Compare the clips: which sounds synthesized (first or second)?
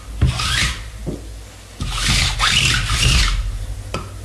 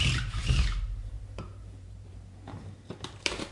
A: second